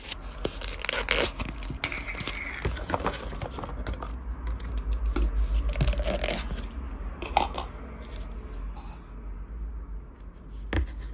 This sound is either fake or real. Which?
real